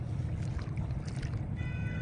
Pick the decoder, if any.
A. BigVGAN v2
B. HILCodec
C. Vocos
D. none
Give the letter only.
D